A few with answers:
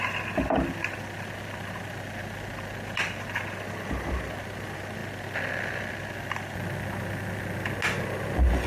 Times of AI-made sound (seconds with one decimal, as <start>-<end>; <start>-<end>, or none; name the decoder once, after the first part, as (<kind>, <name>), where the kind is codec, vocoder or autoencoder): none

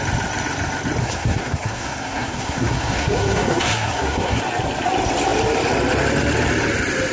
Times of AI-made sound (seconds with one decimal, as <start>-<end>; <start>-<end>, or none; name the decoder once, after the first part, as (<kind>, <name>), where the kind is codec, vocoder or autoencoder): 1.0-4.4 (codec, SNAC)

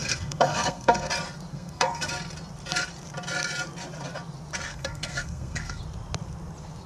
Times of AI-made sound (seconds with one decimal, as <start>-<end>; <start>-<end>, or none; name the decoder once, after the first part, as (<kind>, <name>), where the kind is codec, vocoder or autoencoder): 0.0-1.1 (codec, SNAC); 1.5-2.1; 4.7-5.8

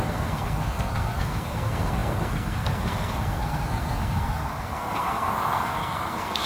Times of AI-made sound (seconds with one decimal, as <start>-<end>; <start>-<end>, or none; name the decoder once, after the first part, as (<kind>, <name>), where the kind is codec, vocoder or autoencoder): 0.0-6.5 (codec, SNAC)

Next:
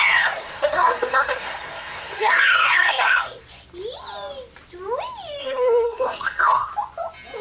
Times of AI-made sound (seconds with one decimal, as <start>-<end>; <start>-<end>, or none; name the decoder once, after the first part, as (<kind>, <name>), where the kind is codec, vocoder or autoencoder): 0.0-3.4 (codec, SNAC); 5.4-6.7

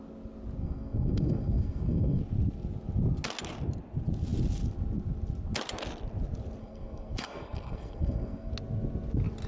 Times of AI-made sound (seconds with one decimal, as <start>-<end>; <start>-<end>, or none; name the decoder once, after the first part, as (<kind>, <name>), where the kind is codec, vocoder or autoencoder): 0.6-2.2 (codec, SNAC); 6.6-8.5

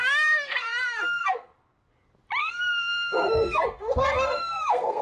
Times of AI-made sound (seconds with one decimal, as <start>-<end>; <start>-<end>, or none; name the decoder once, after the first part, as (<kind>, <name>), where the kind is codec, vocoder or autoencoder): 0.0-1.5 (codec, SNAC); 2.4-5.0